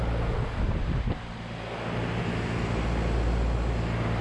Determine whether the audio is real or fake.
real